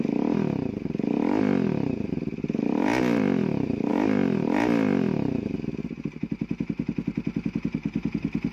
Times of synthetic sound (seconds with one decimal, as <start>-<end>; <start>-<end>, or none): none

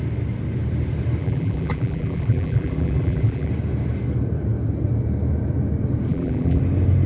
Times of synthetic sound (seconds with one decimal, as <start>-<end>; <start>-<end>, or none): 1.2-3.5; 6.1-6.6

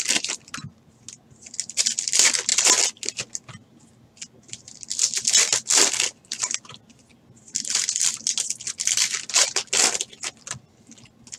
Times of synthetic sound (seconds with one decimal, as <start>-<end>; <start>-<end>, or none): none

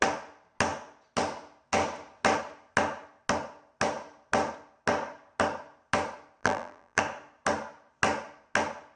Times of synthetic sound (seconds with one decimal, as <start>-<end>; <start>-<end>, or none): 6.4-7.0

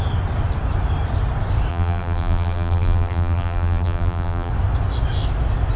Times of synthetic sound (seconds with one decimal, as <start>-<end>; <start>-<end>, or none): 1.7-4.5

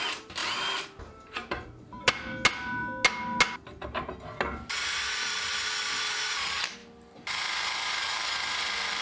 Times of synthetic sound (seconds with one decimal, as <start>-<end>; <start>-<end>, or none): 0.4-2.1

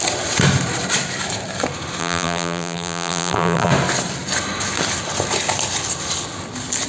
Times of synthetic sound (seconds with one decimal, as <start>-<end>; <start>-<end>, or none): 2.0-3.7

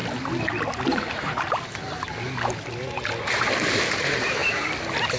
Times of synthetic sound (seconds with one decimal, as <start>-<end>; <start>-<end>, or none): none